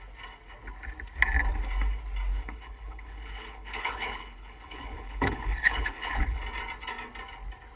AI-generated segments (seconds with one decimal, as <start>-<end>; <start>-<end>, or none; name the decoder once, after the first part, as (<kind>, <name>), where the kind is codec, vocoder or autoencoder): 2.3-6.4 (codec, HILCodec)